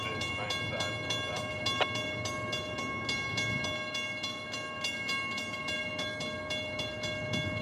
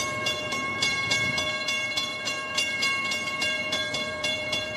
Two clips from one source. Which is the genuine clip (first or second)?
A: first